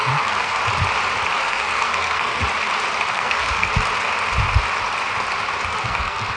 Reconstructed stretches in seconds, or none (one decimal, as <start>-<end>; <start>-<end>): 0.0-0.6; 1.4-2.4; 3.1-3.7; 5.7-6.4